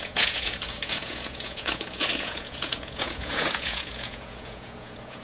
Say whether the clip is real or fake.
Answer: fake